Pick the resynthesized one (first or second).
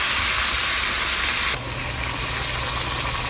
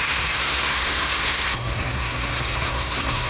second